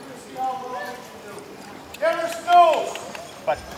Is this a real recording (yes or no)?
yes